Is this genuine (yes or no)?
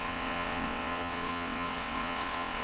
no